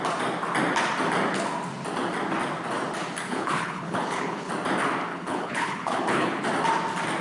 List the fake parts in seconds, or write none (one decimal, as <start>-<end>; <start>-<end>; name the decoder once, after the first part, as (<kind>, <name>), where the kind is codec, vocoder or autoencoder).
3.3-4.5 (codec, HILCodec); 5.1-6.4